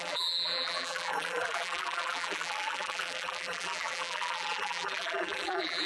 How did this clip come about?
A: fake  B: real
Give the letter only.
A